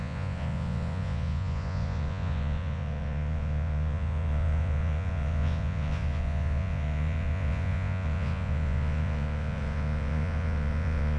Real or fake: fake